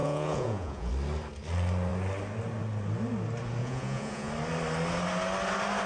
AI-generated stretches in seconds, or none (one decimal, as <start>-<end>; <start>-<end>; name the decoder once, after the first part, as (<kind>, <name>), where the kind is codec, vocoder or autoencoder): 0.0-0.9 (vocoder, Vocos); 3.6-4.3